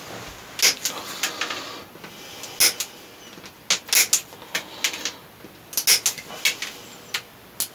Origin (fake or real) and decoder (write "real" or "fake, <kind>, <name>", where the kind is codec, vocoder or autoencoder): real